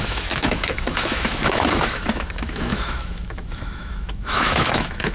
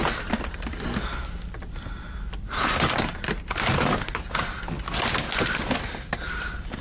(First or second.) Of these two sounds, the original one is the second